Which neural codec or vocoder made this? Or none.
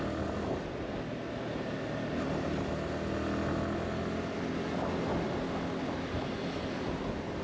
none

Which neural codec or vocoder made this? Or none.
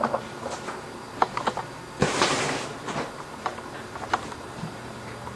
vocoder, BigVGAN v2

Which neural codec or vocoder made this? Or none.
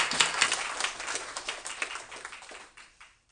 vocoder, BigVGAN v2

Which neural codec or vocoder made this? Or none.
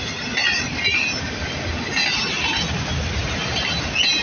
none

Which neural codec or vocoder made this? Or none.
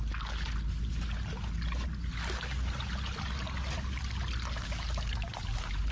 none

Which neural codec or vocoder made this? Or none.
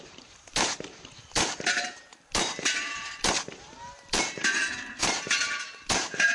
vocoder, BigVGAN v2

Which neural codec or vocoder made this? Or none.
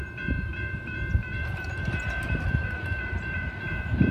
vocoder, BigVGAN v2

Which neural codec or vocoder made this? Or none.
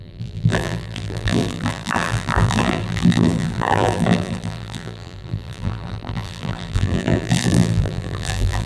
vocoder, BigVGAN v2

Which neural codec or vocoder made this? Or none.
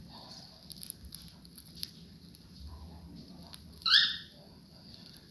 vocoder, BigVGAN v2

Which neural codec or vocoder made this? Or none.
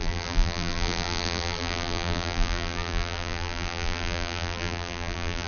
vocoder, BigVGAN v2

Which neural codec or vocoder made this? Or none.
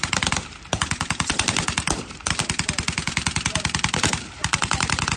vocoder, BigVGAN v2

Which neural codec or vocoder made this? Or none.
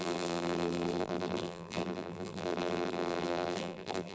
vocoder, BigVGAN v2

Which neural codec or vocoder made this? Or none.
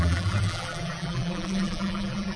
vocoder, BigVGAN v2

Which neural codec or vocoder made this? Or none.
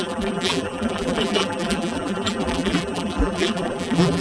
vocoder, BigVGAN v2